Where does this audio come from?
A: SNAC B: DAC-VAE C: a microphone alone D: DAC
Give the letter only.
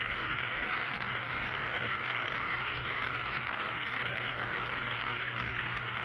D